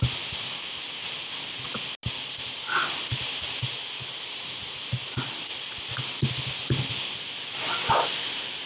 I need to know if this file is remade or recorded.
recorded